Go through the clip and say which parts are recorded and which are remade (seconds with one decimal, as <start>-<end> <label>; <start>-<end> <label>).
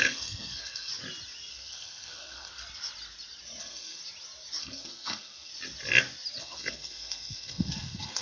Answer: 0.0-0.9 remade; 0.9-1.5 recorded; 1.5-2.6 remade; 2.6-3.6 recorded; 3.6-4.0 remade; 4.0-4.6 recorded; 4.6-5.5 remade; 5.5-6.4 recorded; 6.4-8.2 remade